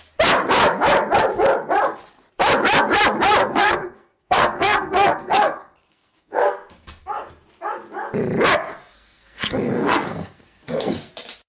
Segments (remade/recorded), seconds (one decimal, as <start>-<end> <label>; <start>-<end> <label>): 0.0-3.4 recorded; 3.4-7.3 remade; 7.3-8.7 recorded; 8.7-11.1 remade; 11.1-11.5 recorded